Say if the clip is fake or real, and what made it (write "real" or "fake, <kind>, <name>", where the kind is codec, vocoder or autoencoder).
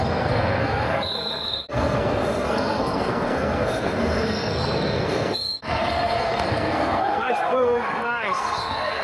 fake, codec, SNAC